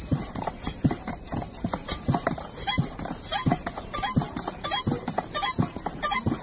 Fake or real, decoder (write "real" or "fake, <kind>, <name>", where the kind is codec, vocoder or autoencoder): fake, vocoder, BigVGAN v2